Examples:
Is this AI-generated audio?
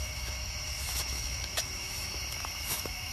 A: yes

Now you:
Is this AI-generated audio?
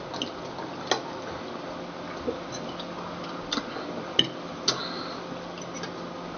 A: no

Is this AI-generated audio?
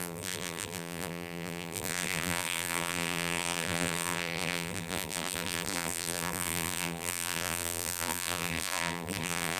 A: yes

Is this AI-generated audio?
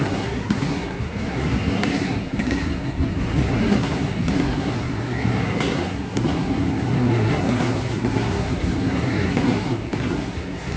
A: yes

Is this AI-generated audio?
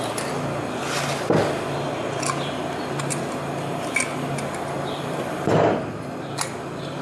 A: no